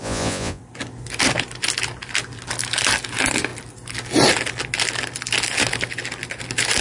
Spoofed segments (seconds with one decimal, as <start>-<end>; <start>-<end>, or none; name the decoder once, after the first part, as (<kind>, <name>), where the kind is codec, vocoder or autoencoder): 0.0-0.6 (vocoder, Vocos)